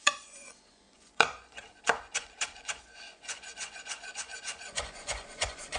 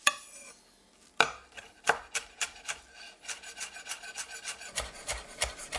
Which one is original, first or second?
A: second